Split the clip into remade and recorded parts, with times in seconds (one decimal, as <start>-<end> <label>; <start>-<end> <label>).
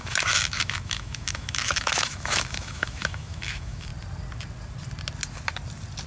0.0-3.9 remade; 3.9-6.1 recorded